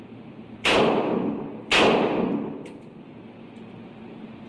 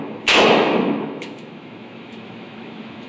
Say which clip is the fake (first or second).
second